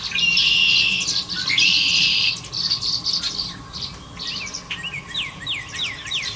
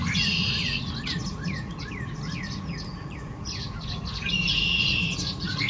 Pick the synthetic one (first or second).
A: second